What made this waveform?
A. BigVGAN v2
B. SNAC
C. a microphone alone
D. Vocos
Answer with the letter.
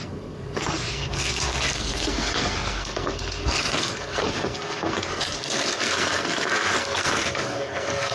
B